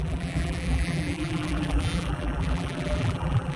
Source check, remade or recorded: remade